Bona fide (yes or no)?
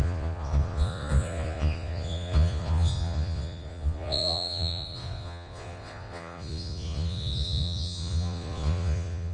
no